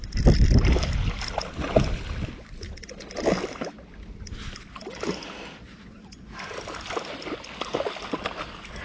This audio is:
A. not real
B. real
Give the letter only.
B